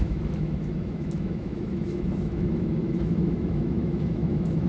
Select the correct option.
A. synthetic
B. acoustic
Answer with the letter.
A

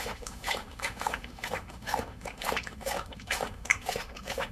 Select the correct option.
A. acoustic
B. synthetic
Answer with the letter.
B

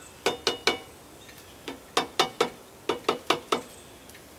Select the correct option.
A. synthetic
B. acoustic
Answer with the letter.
B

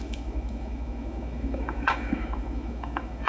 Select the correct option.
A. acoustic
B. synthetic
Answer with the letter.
B